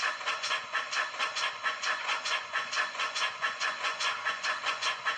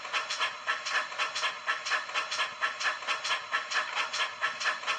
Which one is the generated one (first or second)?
first